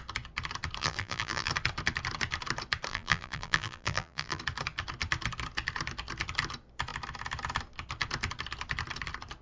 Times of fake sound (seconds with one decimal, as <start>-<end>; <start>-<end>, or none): 0.8-1.5; 2.9-4.4